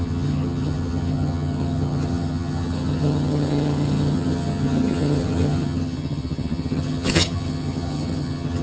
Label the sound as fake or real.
fake